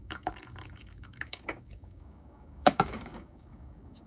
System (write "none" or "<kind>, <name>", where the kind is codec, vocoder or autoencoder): codec, DAC